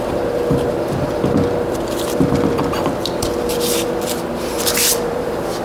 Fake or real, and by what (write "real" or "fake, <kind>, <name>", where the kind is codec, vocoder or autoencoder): fake, vocoder, BigVGAN v2